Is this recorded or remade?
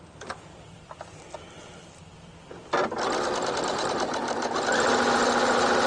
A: recorded